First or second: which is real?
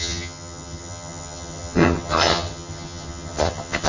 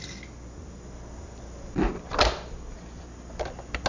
second